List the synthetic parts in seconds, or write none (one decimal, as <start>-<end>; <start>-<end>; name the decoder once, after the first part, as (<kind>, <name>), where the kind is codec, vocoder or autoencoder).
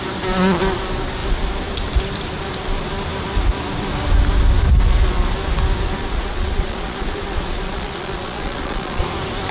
6.0-9.0 (vocoder, Vocos)